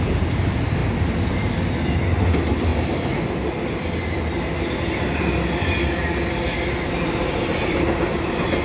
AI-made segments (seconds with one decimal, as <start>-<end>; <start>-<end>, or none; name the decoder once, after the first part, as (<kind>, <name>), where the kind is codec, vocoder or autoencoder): none

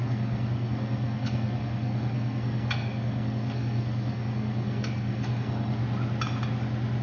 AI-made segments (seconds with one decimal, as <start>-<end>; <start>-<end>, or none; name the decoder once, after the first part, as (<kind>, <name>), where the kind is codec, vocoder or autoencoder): 0.0-5.8 (codec, SNAC)

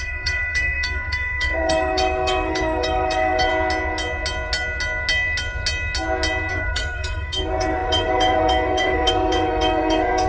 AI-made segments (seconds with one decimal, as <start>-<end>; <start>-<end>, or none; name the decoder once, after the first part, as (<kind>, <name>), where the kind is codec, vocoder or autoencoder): 0.0-3.5 (codec, SNAC); 6.5-10.3

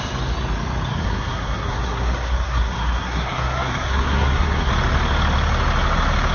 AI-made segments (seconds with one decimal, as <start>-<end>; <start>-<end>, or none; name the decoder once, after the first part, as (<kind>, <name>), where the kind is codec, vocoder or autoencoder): 0.9-4.7 (codec, SNAC)

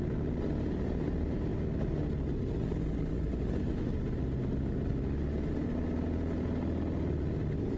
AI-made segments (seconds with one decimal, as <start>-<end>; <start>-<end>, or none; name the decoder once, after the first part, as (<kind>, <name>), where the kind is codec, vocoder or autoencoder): none

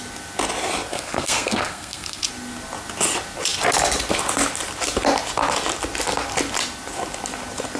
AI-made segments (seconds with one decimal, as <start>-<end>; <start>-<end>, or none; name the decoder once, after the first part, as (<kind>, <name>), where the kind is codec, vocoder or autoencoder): 0.9-2.3 (codec, SNAC)

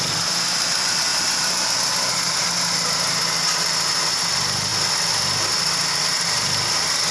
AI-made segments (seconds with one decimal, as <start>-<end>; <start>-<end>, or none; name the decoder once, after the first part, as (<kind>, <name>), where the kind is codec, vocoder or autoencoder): none